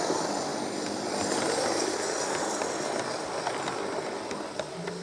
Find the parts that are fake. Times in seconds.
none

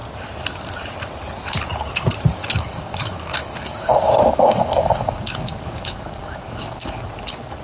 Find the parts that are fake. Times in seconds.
2.4-7.0 (codec, DAC)

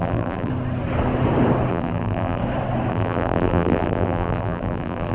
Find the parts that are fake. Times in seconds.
0.0-0.5 (vocoder, BigVGAN v2); 1.7-2.4; 2.9-5.1

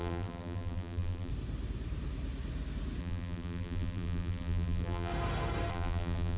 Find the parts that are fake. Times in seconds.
0.0-1.3 (vocoder, BigVGAN v2); 3.0-5.1; 5.7-6.4

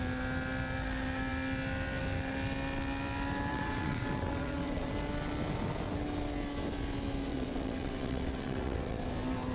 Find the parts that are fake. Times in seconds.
3.5-4.9 (vocoder, WaveNeXt); 7.3-9.0

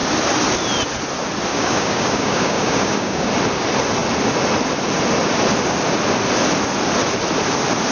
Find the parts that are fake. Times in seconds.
1.5-3.3 (codec, DAC)

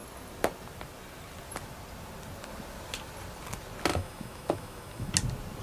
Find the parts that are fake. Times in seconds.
3.9-5.1 (autoencoder, DAC-VAE)